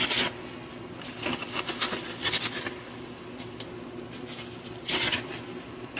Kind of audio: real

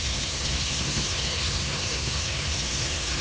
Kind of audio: fake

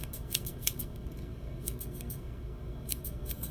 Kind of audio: fake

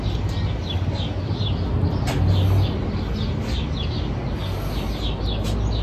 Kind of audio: real